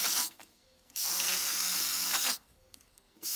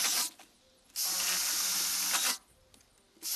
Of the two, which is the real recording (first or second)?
second